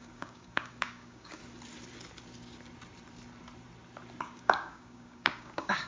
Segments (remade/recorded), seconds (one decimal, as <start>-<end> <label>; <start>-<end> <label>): 0.0-1.4 remade; 1.4-4.2 recorded; 4.2-5.9 remade